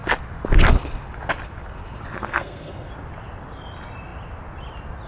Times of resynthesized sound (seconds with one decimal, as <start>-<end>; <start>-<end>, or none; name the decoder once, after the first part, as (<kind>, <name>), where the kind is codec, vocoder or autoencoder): 2.1-2.9 (codec, SNAC)